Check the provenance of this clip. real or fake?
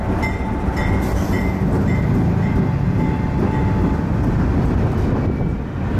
real